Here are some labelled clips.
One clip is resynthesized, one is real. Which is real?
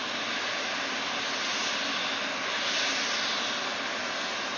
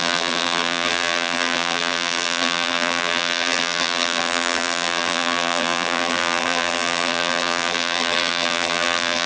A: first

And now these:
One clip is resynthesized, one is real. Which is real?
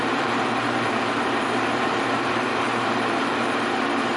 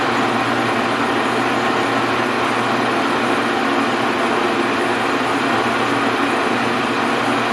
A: second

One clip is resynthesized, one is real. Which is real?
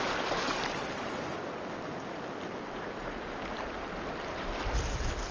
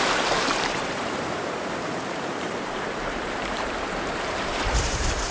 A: first